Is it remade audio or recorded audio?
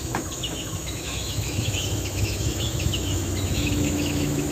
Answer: remade